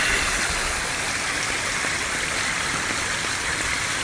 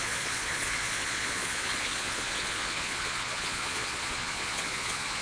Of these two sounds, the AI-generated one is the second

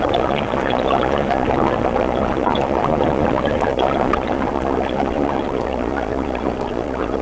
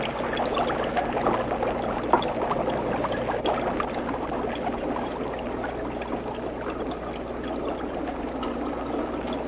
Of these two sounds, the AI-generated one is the first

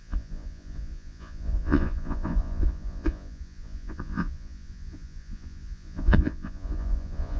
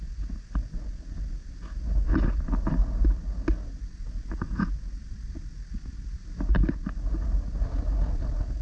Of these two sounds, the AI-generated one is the first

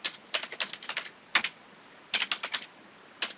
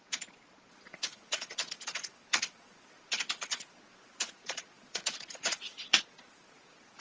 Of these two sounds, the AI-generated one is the second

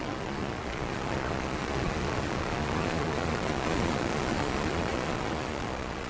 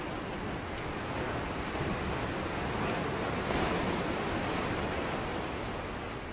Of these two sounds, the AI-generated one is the first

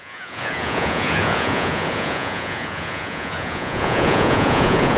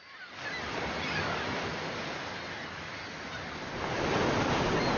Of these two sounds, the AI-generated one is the first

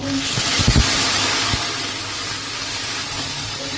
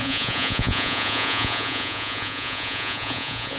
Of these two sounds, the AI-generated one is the second